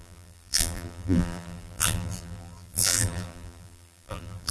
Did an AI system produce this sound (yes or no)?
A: yes